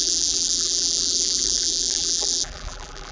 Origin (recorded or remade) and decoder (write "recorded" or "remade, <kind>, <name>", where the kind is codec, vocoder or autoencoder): remade, vocoder, BigVGAN v2